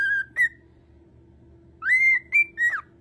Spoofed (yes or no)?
no